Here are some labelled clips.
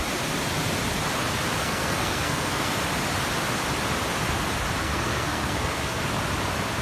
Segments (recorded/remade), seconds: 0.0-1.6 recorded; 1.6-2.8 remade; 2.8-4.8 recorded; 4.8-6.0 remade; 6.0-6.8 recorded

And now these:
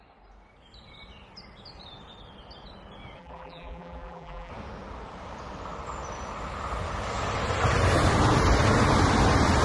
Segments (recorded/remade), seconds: 0.0-3.2 recorded; 3.2-4.5 remade; 4.5-9.6 recorded

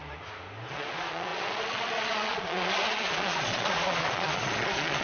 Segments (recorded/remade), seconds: 0.0-0.7 recorded; 0.7-5.0 remade

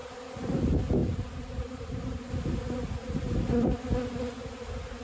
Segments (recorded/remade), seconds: 0.0-0.6 remade; 0.6-1.0 recorded; 1.0-2.3 remade; 2.3-5.0 recorded

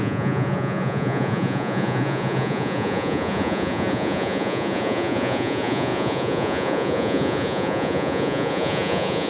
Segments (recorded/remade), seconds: 0.0-9.3 remade

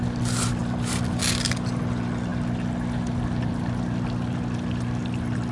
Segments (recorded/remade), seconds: 0.0-5.5 recorded

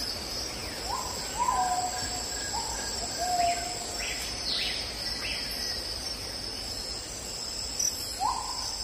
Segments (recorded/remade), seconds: 0.0-8.8 recorded